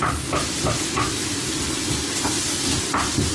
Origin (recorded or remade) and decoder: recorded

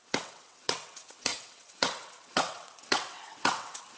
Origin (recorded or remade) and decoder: remade, vocoder, WaveNeXt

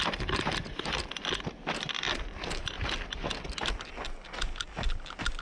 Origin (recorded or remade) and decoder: recorded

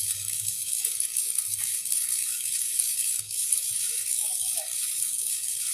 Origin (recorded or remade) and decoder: remade, codec, DAC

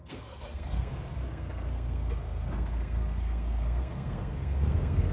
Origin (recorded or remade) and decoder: remade, codec, SNAC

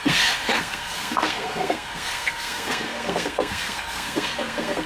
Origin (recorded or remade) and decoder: remade, codec, SNAC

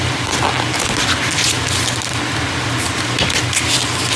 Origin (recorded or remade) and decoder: recorded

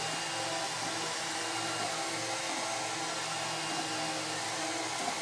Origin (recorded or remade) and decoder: recorded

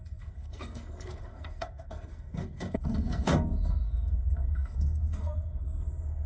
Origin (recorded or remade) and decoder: remade, codec, SNAC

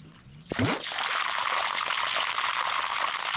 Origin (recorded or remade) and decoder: recorded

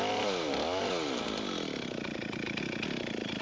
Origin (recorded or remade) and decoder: recorded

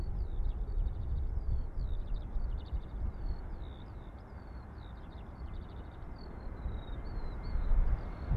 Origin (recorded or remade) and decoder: remade, vocoder, BigVGAN v2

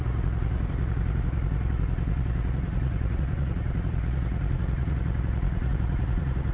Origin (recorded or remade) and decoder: remade, vocoder, Vocos